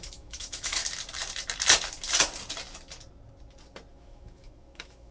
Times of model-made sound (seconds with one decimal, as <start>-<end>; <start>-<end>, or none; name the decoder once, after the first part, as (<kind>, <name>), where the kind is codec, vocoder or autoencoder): 0.0-0.8 (autoencoder, DAC-VAE); 3.9-5.1